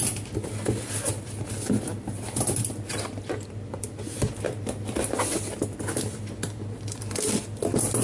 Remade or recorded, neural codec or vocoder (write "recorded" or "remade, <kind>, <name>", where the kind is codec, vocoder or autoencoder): recorded